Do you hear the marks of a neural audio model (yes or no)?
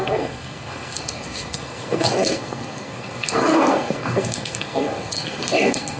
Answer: yes